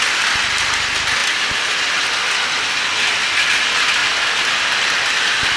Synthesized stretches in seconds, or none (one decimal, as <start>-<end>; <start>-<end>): 4.0-4.6